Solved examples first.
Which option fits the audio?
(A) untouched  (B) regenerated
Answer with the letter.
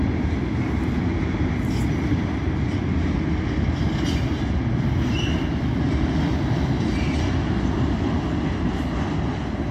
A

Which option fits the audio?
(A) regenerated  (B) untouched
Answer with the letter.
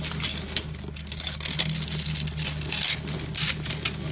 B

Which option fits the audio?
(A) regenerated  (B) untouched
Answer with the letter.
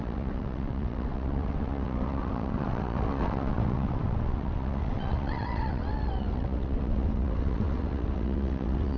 A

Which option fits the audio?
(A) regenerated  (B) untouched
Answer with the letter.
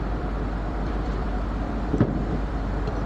A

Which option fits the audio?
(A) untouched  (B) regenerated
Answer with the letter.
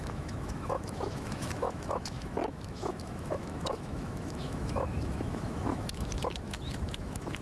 B